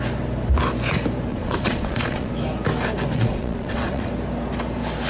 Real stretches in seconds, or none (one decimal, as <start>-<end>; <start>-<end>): 0.0-1.3; 2.3-3.1; 4.1-5.1